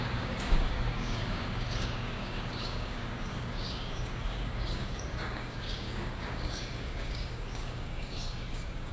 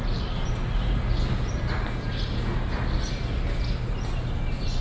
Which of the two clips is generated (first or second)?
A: first